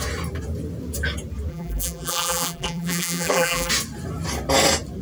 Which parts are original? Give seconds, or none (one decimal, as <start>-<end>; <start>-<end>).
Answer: 0.0-1.5; 3.7-5.0